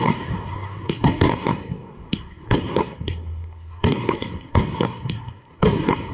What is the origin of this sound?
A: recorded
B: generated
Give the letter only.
B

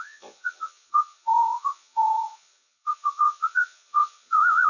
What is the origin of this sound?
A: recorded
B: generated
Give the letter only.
B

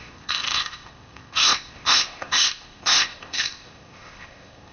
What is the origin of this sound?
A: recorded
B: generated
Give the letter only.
B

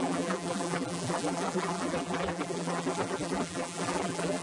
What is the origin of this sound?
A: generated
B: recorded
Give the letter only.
A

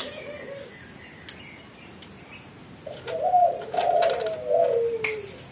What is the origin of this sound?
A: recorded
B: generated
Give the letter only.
A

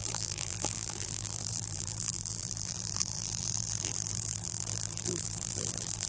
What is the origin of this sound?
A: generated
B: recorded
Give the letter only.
A